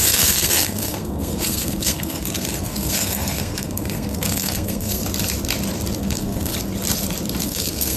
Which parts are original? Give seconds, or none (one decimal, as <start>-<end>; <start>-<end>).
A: 5.0-6.0; 6.5-7.4